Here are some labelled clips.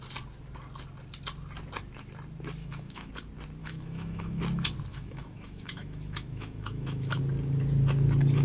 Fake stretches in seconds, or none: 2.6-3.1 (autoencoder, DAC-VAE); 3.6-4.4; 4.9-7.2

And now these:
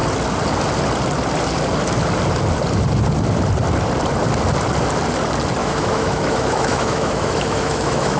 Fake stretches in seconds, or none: 5.6-8.2 (autoencoder, DAC-VAE)